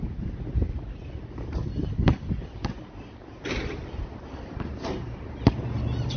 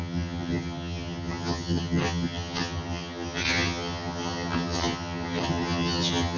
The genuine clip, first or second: first